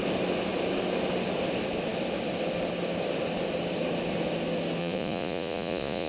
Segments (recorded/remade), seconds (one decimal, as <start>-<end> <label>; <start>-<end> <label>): 0.0-4.8 recorded; 4.8-6.1 remade